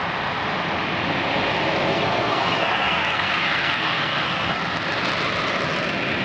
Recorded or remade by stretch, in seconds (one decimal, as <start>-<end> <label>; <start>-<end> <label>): 0.0-1.9 recorded; 1.9-4.6 remade; 4.6-6.2 recorded